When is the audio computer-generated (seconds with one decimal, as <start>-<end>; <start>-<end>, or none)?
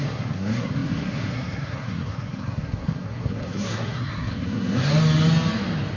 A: 0.0-4.9